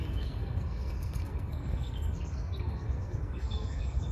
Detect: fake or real fake